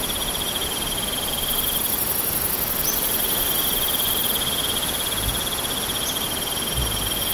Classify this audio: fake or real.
real